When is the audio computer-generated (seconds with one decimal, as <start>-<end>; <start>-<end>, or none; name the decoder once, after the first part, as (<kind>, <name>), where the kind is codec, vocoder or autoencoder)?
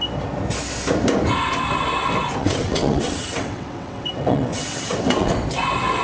2.4-5.4 (vocoder, WaveNeXt)